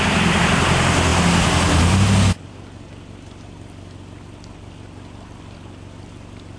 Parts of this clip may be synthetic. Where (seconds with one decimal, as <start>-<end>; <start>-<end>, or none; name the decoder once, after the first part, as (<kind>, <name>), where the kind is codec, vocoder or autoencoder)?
none